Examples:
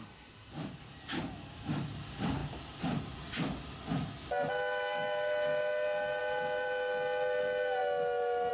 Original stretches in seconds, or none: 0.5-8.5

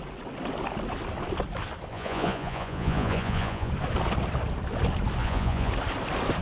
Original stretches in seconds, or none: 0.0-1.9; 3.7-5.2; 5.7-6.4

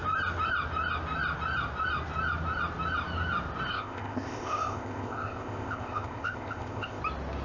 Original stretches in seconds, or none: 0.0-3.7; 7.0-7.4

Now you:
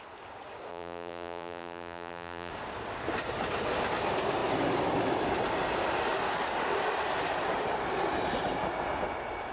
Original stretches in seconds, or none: 0.0-0.7; 2.5-9.5

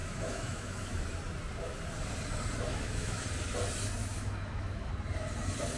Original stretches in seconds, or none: 1.0-2.7; 3.2-4.0; 4.9-5.8